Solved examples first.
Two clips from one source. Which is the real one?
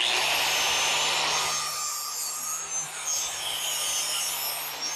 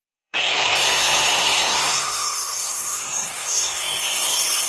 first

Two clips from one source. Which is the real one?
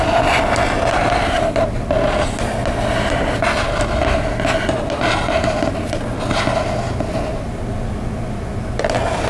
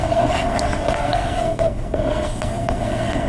first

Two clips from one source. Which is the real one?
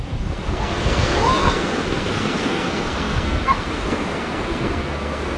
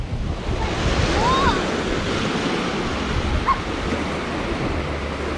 second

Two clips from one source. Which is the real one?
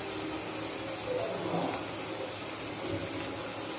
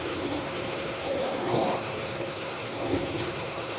first